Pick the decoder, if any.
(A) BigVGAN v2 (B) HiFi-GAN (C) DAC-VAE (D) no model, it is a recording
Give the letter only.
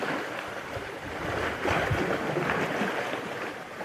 D